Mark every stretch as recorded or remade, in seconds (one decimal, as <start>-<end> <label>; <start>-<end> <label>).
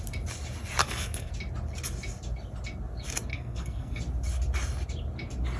0.0-0.8 recorded; 0.8-1.3 remade; 1.3-3.3 recorded; 3.3-4.0 remade; 4.0-5.6 recorded